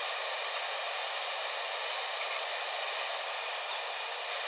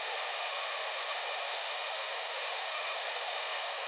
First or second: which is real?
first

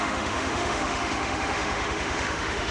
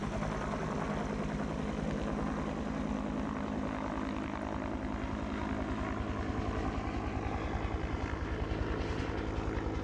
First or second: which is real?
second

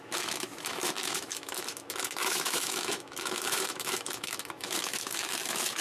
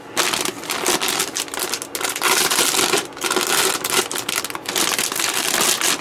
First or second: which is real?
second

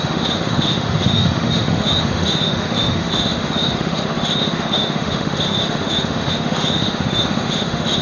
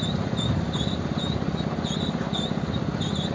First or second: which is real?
second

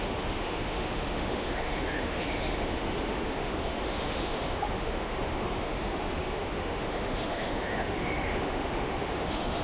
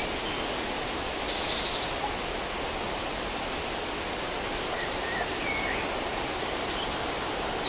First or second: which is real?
second